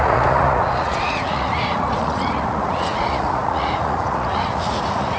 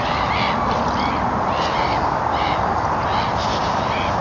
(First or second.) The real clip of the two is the second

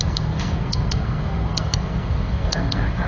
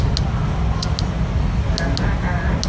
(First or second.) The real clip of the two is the second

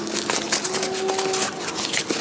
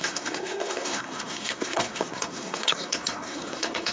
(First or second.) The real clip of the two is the first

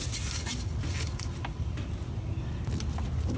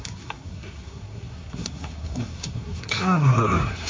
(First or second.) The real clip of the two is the first